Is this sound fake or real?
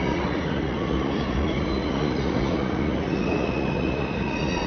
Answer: fake